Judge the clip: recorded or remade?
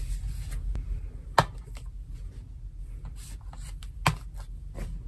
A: recorded